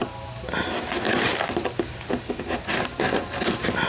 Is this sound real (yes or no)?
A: yes